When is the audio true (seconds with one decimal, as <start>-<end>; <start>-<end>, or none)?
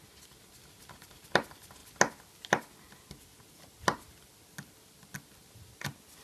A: 0.0-6.2